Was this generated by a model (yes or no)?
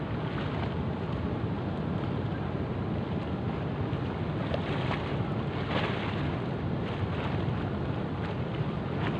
no